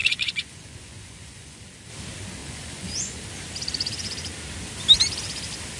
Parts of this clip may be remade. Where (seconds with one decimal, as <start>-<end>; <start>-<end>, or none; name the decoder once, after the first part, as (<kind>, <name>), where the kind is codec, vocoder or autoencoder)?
0.0-1.6 (vocoder, Vocos); 2.4-3.2